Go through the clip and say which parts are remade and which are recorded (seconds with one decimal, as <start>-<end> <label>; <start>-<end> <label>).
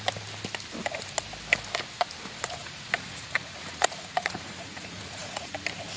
0.0-2.6 recorded; 2.6-5.5 remade; 5.5-6.0 recorded